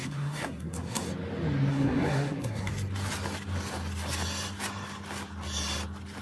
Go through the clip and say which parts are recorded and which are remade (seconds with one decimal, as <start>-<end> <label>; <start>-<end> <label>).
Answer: 0.0-1.1 remade; 1.1-1.7 recorded; 1.7-2.7 remade; 2.7-6.2 recorded